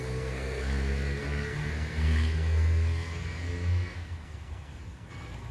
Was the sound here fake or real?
fake